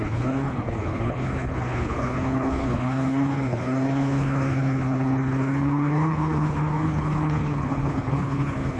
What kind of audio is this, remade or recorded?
remade